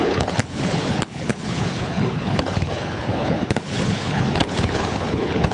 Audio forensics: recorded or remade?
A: remade